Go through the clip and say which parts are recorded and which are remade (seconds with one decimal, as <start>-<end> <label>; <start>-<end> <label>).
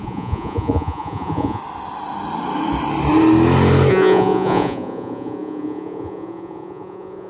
0.0-1.6 remade; 1.6-3.9 recorded; 3.9-7.3 remade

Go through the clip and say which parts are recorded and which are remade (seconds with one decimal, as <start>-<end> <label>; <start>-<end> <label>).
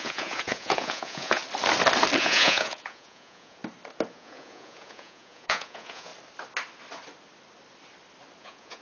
0.0-1.4 remade; 1.4-2.2 recorded; 2.2-3.6 remade; 3.6-4.1 recorded; 4.1-6.1 remade; 6.1-8.4 recorded; 8.4-8.8 remade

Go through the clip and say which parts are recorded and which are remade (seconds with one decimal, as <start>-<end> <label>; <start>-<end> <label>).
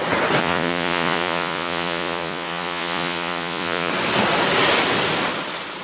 0.0-0.4 recorded; 0.4-3.9 remade; 3.9-5.8 recorded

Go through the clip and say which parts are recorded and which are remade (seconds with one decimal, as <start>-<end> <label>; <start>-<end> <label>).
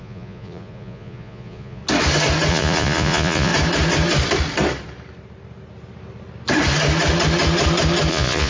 0.0-1.8 remade; 1.8-2.5 recorded; 2.5-3.5 remade; 3.5-8.1 recorded; 8.1-8.5 remade